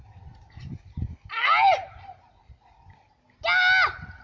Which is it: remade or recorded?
recorded